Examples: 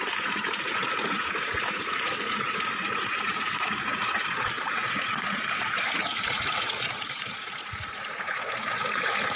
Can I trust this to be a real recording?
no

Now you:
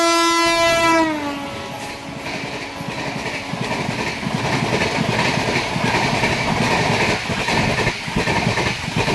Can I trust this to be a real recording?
yes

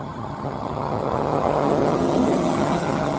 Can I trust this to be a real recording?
no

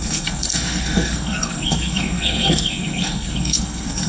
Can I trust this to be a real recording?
no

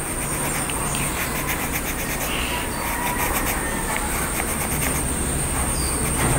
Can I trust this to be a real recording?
yes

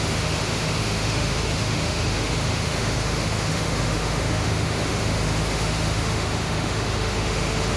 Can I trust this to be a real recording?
no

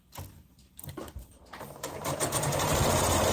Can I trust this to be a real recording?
no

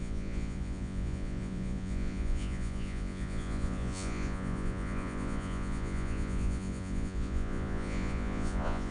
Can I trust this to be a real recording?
no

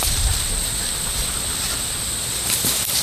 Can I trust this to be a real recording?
yes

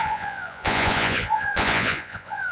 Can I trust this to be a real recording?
no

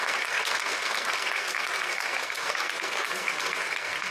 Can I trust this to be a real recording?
no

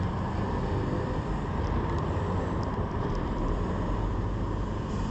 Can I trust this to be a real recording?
no